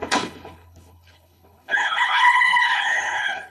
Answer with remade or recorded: remade